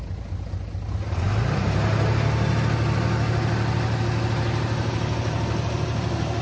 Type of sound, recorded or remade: recorded